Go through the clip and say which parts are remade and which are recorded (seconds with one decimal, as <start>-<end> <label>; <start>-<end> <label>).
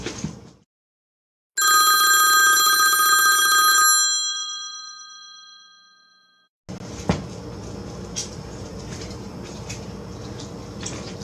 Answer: 0.0-4.3 recorded; 4.3-6.6 remade; 6.6-8.2 recorded; 8.2-9.9 remade; 9.9-11.2 recorded